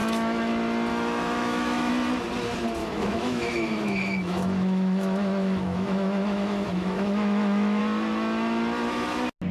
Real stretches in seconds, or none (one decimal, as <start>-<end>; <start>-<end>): 0.5-0.9; 1.9-2.8; 7.8-9.5